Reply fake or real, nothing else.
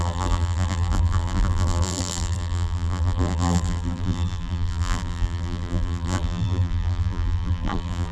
fake